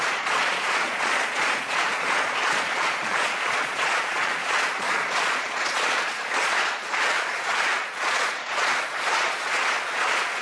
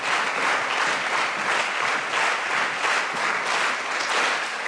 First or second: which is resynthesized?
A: first